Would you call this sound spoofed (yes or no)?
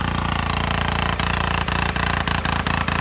no